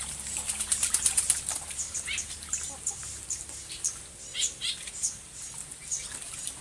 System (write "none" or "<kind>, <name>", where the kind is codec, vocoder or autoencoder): vocoder, BigVGAN v2